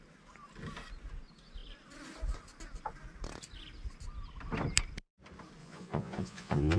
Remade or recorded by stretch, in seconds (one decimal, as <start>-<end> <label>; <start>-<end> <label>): 0.0-5.6 recorded; 5.6-6.8 remade